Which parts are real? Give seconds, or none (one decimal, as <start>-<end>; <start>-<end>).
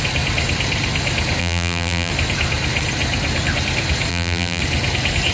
0.0-1.4; 2.1-4.1; 4.6-5.3